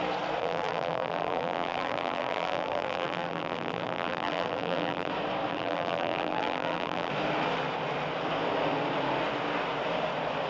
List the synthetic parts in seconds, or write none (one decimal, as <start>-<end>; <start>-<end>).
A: 0.4-5.1; 5.5-7.1